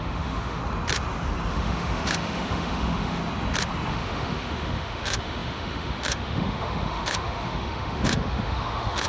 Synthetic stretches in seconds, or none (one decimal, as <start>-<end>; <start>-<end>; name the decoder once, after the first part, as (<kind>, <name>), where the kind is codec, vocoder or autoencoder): 0.0-0.6 (autoencoder, DAC-VAE); 1.5-3.2; 3.9-9.1